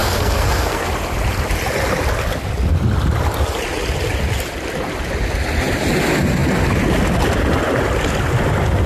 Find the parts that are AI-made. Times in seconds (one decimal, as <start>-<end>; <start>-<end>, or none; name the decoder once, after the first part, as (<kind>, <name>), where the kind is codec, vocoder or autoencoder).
0.0-0.9 (codec, SNAC)